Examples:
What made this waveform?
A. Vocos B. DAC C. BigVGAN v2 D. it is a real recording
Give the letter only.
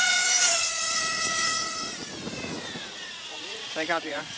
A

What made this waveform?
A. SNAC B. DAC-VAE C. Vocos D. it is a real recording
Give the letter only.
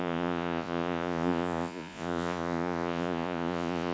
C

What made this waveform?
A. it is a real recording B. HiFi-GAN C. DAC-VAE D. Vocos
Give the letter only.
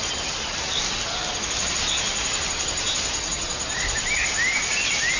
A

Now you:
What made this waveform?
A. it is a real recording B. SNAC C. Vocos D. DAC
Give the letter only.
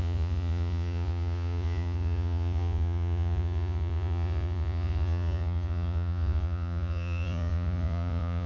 C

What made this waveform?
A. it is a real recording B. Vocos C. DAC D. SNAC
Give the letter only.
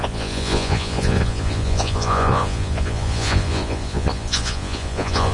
B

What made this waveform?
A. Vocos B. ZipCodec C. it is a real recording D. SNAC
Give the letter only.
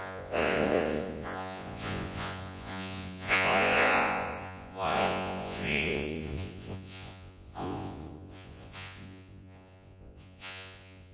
A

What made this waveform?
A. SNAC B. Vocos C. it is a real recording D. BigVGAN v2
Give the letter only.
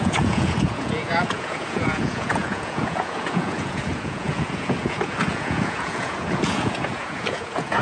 B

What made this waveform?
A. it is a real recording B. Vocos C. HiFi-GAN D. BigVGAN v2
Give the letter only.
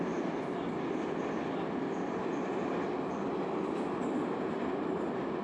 A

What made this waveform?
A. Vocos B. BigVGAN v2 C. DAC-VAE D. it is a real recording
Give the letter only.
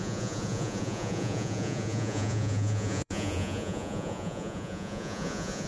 A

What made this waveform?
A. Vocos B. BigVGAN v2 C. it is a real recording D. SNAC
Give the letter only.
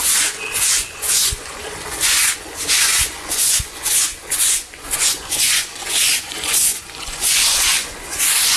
A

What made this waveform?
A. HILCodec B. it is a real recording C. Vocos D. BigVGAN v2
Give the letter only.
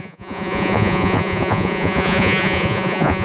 C